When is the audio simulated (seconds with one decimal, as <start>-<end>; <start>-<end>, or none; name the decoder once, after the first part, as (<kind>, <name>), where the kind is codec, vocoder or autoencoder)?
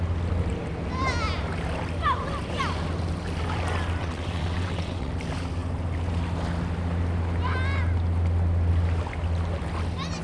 4.0-5.1 (vocoder, WaveNeXt)